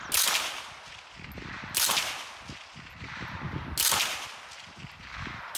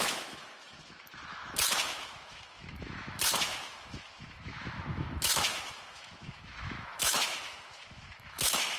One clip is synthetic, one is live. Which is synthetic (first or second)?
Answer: second